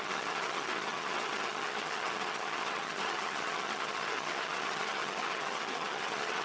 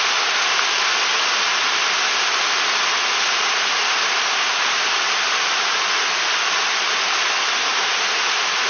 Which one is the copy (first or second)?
first